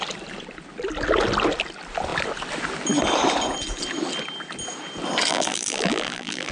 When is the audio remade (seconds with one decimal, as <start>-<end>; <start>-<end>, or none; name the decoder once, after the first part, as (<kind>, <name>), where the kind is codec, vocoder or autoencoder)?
5.3-6.5 (vocoder, BigVGAN v2)